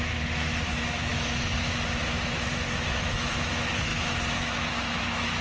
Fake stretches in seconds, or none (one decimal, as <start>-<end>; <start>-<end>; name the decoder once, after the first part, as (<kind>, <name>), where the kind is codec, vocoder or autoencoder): 0.0-5.4 (autoencoder, DAC-VAE)